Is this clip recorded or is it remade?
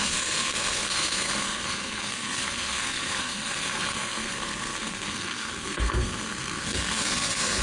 remade